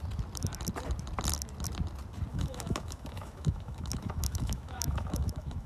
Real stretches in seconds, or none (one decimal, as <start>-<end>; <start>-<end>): 0.0-2.3